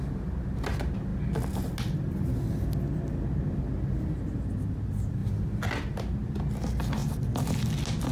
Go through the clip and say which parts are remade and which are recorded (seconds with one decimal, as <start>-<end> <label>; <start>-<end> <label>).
0.0-8.1 recorded